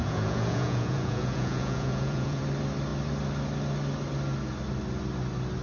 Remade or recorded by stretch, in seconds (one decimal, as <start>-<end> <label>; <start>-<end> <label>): 0.0-2.4 remade; 2.4-5.6 recorded